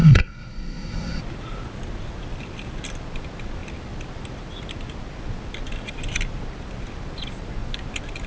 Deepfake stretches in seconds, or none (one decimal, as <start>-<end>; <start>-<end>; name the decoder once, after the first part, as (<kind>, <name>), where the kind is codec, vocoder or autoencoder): 0.0-1.2 (codec, SNAC)